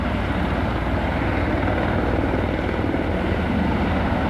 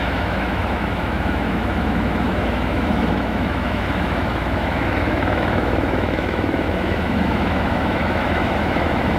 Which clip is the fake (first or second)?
second